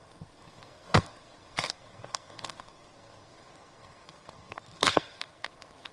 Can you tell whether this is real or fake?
fake